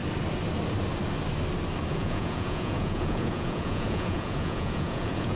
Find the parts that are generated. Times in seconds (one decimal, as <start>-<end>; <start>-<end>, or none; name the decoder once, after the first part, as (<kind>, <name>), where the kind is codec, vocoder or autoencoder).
1.9-5.4 (vocoder, Vocos)